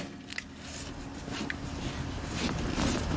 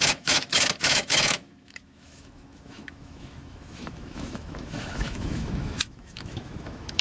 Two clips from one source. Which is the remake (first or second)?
second